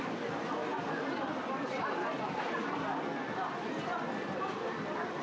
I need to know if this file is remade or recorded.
remade